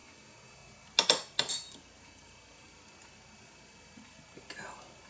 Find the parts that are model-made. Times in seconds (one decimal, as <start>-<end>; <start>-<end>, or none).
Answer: none